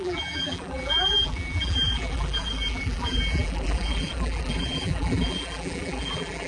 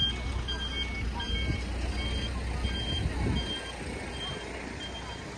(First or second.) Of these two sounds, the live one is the second